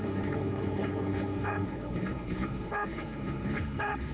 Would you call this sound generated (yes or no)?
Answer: yes